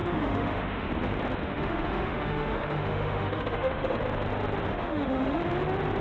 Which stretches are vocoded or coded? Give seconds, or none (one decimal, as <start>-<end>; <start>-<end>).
0.0-0.9; 1.4-4.0; 4.7-5.4